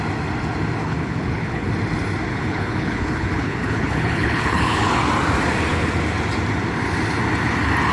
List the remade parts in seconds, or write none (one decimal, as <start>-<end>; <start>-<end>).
0.8-1.7; 2.3-4.9